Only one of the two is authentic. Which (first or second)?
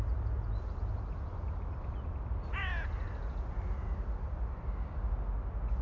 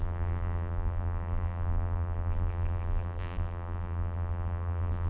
first